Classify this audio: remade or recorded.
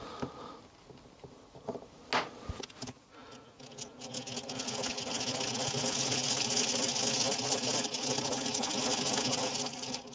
recorded